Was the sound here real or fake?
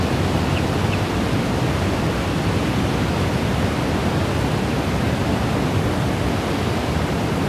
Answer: real